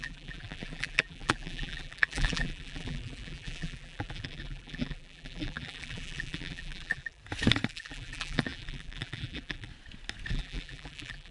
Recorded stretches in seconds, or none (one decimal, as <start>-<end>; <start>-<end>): 7.2-7.7; 9.7-10.3